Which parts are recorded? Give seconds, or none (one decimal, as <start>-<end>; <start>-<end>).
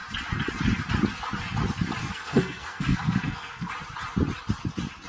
0.0-2.0; 3.7-5.1